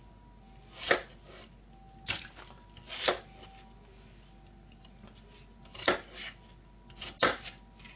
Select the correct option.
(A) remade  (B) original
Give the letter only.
B